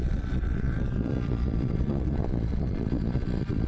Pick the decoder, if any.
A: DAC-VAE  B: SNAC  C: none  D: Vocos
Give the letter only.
D